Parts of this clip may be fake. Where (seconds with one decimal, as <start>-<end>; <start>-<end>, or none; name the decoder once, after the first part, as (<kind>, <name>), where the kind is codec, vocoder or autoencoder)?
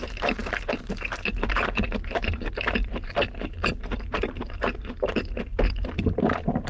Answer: 0.0-6.7 (vocoder, BigVGAN v2)